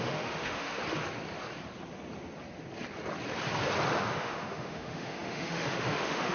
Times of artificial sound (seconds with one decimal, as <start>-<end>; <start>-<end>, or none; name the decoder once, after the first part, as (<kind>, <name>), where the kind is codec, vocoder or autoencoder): 0.0-0.8 (autoencoder, DAC-VAE); 4.2-6.3